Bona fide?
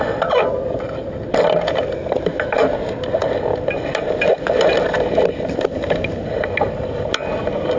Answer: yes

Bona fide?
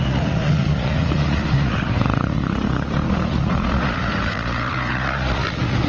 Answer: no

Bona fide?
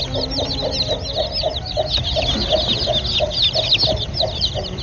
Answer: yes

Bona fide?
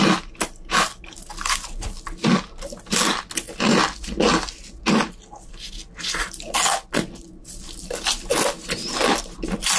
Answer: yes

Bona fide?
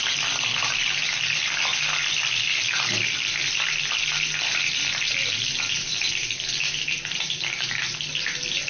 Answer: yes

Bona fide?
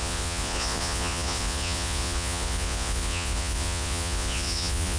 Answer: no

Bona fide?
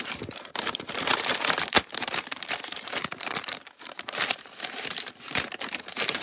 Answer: no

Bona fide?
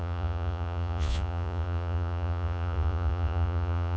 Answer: no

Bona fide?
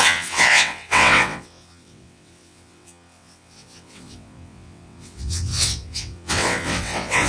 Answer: no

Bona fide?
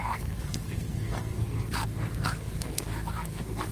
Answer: no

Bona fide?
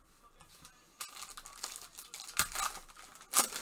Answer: yes